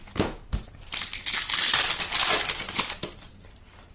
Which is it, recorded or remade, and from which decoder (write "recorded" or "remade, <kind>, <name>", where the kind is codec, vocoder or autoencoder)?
recorded